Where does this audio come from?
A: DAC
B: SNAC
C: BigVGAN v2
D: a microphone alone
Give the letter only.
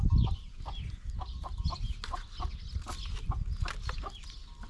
D